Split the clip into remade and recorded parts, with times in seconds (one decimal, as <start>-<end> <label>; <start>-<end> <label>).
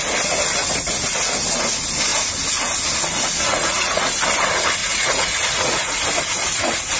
0.0-0.6 recorded; 0.6-1.3 remade; 1.3-3.5 recorded; 3.5-4.1 remade; 4.1-4.8 recorded; 4.8-6.0 remade; 6.0-7.0 recorded